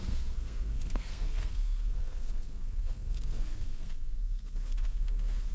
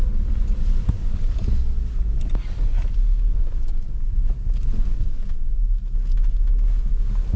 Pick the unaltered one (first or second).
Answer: second